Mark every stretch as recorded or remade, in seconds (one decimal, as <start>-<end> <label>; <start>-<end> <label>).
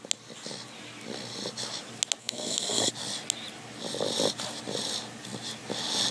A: 0.0-2.2 recorded; 2.2-2.9 remade; 2.9-6.1 recorded